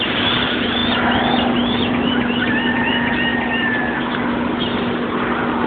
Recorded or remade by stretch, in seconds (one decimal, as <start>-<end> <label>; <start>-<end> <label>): 0.0-5.7 recorded